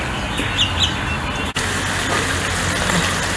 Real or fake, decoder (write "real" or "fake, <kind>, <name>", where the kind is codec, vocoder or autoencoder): real